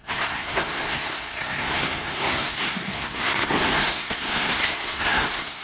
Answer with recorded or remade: remade